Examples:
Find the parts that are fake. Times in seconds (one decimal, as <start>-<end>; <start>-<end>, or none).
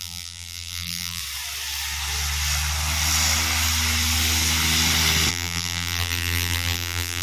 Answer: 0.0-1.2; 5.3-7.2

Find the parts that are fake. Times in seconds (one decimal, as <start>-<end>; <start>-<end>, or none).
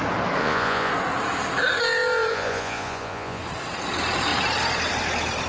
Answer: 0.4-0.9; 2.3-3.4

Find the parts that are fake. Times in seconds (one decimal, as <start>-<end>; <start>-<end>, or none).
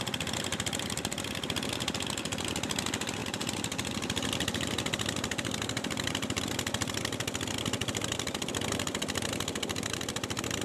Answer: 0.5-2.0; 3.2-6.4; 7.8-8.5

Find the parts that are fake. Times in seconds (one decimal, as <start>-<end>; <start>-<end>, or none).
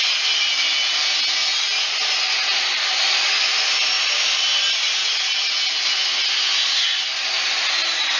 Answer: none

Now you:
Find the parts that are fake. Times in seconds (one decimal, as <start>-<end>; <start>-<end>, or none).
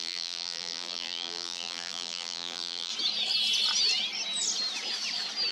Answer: 0.0-2.9